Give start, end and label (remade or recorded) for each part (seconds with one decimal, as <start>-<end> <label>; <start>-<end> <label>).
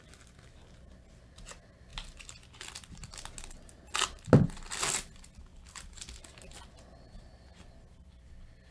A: 0.0-8.7 recorded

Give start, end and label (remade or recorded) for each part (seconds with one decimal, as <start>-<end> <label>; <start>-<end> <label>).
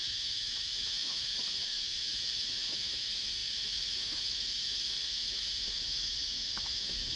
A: 0.0-7.2 remade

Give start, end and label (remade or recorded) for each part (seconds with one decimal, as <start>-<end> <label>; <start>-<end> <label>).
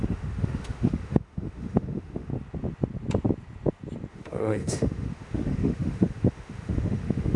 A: 0.0-2.3 remade; 2.3-4.1 recorded; 4.1-7.4 remade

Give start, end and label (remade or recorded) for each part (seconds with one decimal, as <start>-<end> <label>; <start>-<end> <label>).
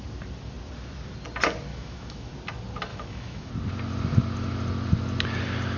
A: 0.0-1.7 recorded; 1.7-2.3 remade; 2.3-2.9 recorded; 2.9-3.5 remade; 3.5-5.8 recorded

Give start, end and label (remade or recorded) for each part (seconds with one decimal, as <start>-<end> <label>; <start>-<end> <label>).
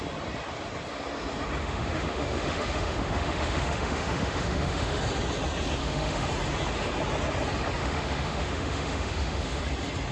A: 0.0-1.6 recorded; 1.6-5.0 remade; 5.0-5.8 recorded; 5.8-6.3 remade; 6.3-7.8 recorded; 7.8-9.6 remade; 9.6-10.1 recorded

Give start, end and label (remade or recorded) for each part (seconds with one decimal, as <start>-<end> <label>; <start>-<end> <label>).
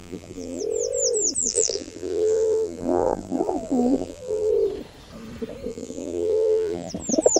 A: 0.0-0.6 remade; 0.6-1.4 recorded; 1.4-4.5 remade; 4.5-5.7 recorded; 5.7-6.9 remade; 6.9-7.4 recorded